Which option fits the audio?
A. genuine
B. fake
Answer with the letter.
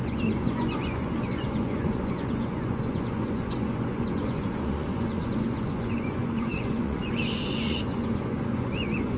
B